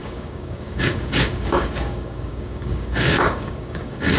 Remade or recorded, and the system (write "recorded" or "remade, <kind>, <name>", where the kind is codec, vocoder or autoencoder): remade, codec, DAC